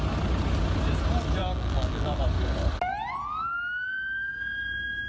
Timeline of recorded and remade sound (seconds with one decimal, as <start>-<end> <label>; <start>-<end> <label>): 0.0-1.4 recorded; 1.4-2.2 remade; 2.2-5.1 recorded